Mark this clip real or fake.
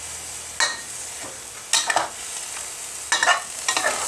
real